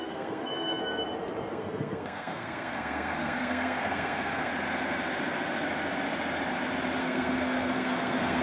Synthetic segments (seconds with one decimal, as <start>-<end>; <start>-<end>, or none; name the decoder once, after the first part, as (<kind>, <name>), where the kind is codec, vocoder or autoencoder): 0.0-0.8 (codec, SNAC); 1.5-4.5; 7.0-8.4